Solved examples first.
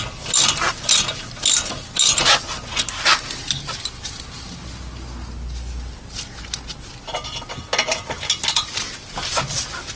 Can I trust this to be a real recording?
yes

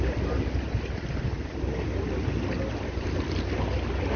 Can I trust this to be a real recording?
yes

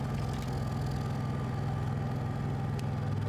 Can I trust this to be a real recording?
yes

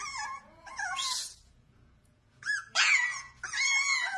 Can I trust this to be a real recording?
no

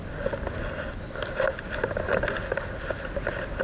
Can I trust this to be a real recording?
yes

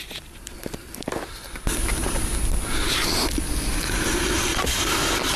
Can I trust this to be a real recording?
yes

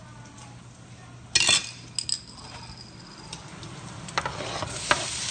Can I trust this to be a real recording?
yes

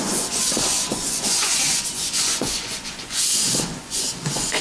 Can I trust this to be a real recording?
no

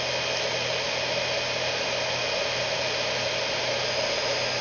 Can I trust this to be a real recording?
yes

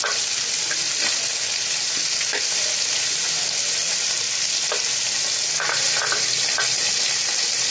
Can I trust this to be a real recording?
yes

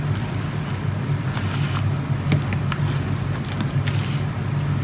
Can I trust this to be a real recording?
yes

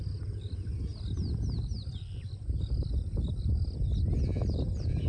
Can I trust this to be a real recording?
yes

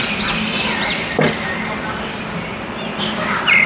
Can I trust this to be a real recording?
yes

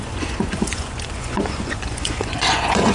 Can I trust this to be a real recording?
no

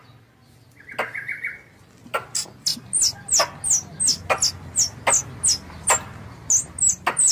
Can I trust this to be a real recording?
yes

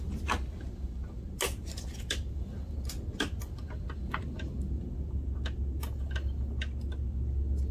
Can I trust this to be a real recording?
yes